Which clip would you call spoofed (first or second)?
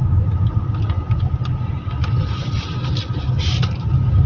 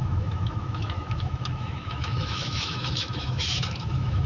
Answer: second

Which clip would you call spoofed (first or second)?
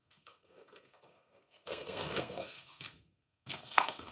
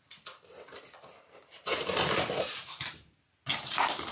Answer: first